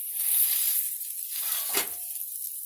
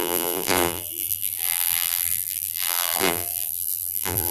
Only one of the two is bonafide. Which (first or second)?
first